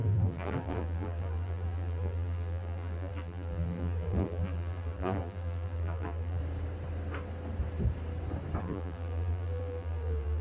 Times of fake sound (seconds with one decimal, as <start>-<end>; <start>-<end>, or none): 0.0-6.4; 8.6-10.4